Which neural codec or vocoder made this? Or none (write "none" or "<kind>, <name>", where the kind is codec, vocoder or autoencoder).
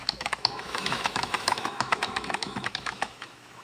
autoencoder, DAC-VAE